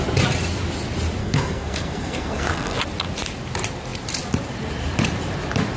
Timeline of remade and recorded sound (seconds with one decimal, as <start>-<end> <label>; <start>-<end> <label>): 0.0-1.2 recorded; 1.2-2.8 remade; 2.8-5.8 recorded

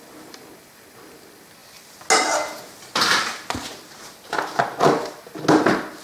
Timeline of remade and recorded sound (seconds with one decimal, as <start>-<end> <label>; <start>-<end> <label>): 0.0-6.0 recorded

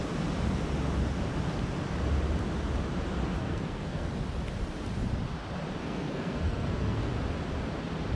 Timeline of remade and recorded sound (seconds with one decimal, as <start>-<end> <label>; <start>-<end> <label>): 0.0-3.4 recorded; 3.4-4.1 remade; 4.1-5.8 recorded; 5.8-7.1 remade; 7.1-8.2 recorded

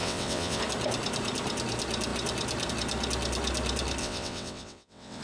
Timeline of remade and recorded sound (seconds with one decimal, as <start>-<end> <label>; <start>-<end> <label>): 0.0-0.6 remade; 0.6-4.0 recorded; 4.0-5.2 remade